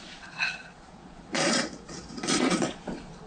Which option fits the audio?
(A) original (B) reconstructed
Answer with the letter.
B